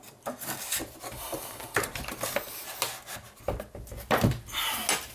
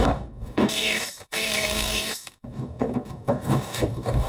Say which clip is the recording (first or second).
first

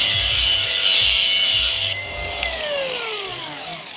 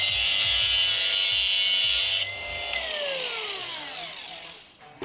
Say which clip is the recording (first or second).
second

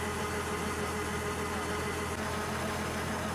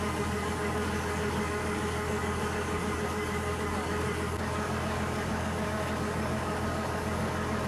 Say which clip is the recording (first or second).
first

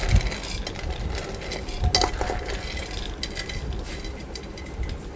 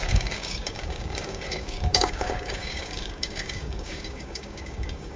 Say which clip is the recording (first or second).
first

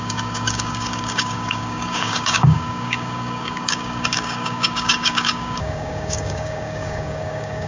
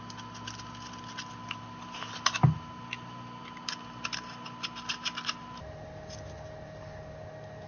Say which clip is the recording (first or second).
second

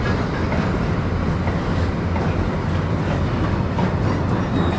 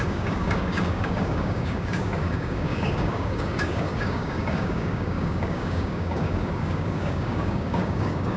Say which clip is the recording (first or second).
first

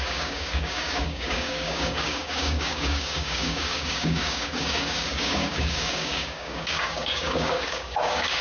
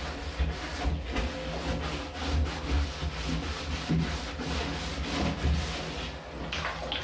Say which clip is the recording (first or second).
second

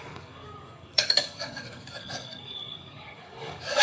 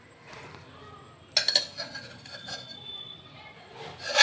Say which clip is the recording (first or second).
second